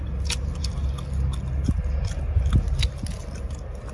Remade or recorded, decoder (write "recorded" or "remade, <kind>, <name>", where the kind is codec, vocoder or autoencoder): recorded